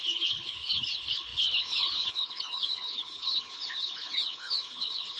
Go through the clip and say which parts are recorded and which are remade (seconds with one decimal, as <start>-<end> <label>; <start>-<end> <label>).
0.0-5.2 remade